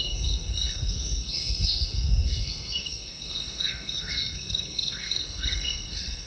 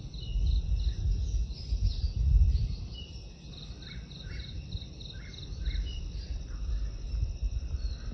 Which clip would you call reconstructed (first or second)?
first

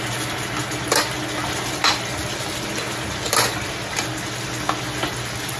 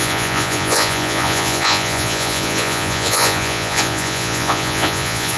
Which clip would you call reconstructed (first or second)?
second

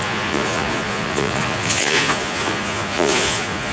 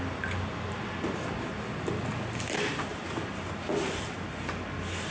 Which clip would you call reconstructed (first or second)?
first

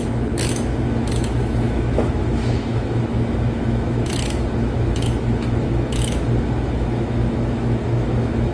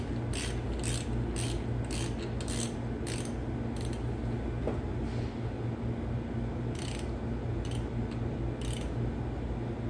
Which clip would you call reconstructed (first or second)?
first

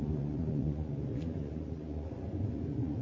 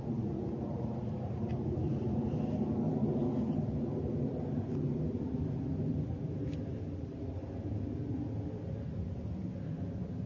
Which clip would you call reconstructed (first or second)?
first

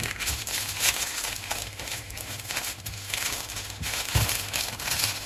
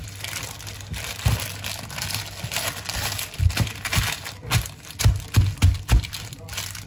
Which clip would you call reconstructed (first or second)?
first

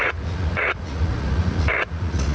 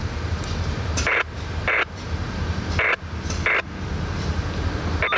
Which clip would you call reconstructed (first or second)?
first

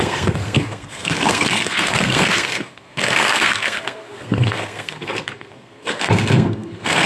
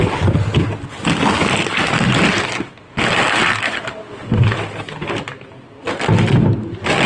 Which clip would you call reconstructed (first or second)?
first